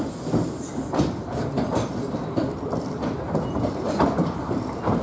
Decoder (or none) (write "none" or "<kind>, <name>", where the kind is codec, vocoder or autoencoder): none